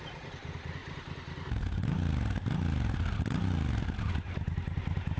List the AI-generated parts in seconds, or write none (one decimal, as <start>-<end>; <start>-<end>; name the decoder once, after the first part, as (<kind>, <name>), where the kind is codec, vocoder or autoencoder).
none